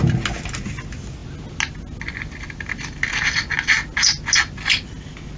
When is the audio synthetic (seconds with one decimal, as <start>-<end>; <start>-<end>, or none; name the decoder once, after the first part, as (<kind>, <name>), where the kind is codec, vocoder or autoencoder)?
none